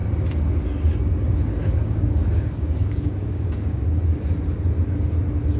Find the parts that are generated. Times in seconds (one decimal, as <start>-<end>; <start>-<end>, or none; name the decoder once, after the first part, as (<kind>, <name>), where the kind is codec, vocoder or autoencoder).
1.6-3.8 (codec, DAC)